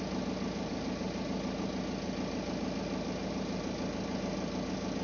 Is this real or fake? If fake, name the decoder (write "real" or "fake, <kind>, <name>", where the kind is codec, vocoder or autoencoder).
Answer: real